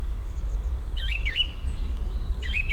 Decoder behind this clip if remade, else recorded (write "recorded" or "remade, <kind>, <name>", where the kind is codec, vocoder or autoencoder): remade, codec, DAC